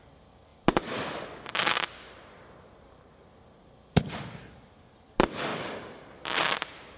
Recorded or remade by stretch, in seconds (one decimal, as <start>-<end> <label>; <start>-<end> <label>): 0.0-7.0 recorded